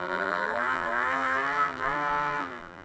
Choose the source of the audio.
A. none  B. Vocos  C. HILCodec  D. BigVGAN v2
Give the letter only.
D